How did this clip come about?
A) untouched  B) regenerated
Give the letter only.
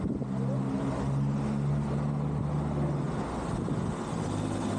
A